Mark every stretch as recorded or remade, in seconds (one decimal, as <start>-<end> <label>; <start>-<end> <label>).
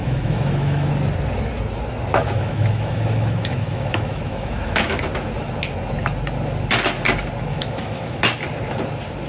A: 0.0-0.9 remade; 0.9-2.1 recorded; 2.1-5.0 remade; 5.0-7.5 recorded; 7.5-8.2 remade; 8.2-9.3 recorded